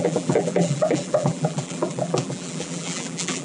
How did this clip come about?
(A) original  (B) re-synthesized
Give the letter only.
B